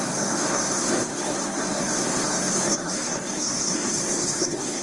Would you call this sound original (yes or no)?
no